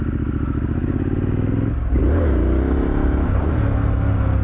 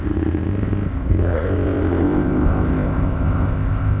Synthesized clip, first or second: second